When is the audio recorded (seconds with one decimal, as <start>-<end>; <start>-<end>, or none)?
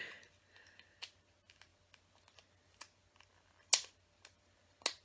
0.0-5.0